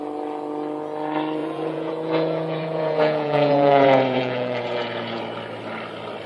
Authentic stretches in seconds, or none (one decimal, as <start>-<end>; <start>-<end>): 0.0-1.4; 5.2-6.3